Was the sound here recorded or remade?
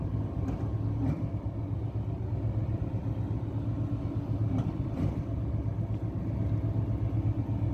recorded